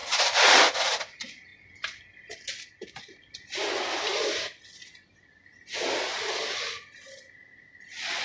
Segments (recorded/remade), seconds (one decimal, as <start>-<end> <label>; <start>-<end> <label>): 0.0-8.2 recorded